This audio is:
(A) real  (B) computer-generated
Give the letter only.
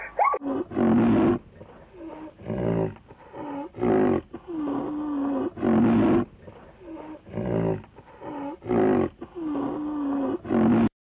A